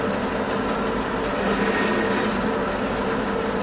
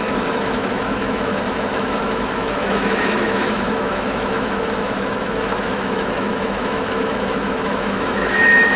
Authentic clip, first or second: first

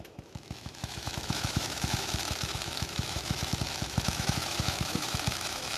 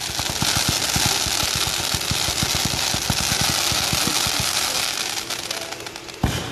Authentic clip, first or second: second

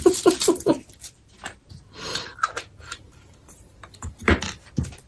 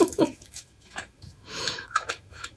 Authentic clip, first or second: first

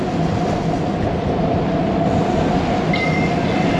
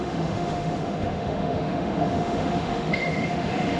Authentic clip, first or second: first